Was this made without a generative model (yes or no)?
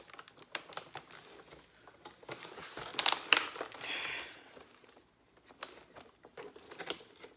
yes